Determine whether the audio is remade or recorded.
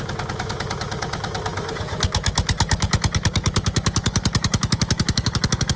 remade